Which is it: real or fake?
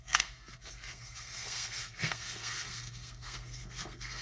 fake